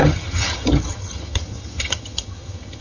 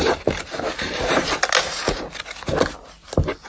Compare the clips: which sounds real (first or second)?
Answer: second